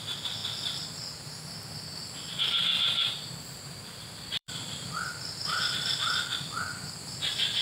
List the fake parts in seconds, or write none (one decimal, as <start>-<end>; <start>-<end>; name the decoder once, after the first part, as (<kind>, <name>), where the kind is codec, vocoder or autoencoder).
2.6-5.4 (vocoder, BigVGAN v2)